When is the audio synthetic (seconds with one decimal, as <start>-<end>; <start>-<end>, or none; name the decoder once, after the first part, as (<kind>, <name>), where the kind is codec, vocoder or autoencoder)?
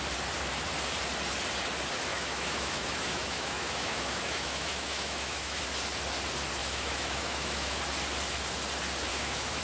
2.1-5.6 (autoencoder, DAC-VAE); 6.6-7.8; 9.1-9.6